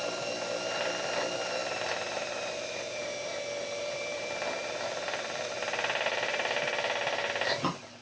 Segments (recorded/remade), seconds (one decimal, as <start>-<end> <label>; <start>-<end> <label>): 0.0-1.6 recorded; 1.6-3.3 remade; 3.3-3.8 recorded; 3.8-6.7 remade; 6.7-8.0 recorded